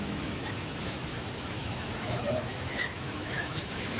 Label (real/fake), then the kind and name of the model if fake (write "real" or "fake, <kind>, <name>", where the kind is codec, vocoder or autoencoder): fake, autoencoder, DAC-VAE